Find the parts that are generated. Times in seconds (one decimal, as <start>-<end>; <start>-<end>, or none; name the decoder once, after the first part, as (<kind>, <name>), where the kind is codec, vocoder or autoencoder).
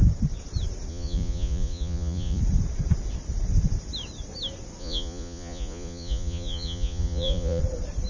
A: 0.9-2.4 (vocoder, Vocos); 4.8-7.6